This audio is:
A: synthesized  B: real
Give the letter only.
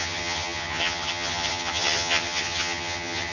A